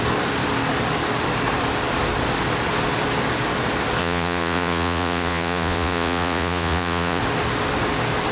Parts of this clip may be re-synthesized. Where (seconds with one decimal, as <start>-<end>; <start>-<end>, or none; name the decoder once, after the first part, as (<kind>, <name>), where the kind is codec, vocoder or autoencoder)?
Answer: 4.0-7.2 (vocoder, Vocos)